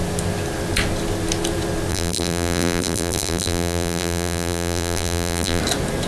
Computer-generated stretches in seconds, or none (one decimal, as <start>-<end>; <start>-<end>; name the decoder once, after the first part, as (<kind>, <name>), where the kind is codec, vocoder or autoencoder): 1.9-5.6 (vocoder, BigVGAN v2)